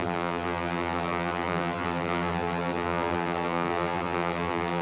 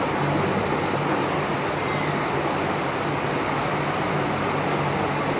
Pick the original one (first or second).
second